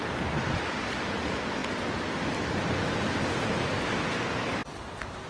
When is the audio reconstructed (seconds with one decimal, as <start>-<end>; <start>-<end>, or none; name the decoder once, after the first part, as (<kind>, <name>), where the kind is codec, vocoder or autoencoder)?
none